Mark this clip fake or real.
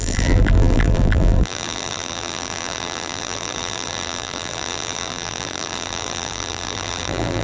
fake